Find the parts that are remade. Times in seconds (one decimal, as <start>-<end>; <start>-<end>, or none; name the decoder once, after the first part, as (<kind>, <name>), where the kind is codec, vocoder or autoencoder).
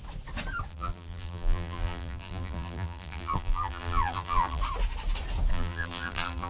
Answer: 0.7-4.6 (vocoder, BigVGAN v2); 5.5-6.5